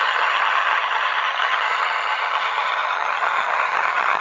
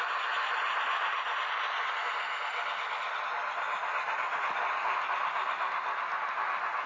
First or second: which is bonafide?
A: second